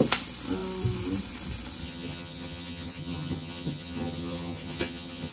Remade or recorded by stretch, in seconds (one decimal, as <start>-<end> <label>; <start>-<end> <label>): 0.0-1.8 recorded; 1.8-5.3 remade